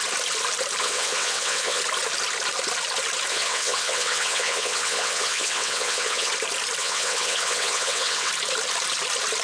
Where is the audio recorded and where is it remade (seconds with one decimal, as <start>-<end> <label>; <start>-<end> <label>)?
0.0-0.8 recorded; 0.8-1.8 remade; 1.8-3.3 recorded; 3.3-6.3 remade; 6.3-6.8 recorded; 6.8-8.3 remade; 8.3-9.4 recorded